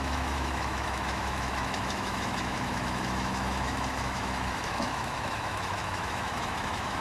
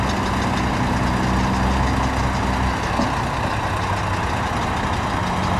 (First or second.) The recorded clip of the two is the second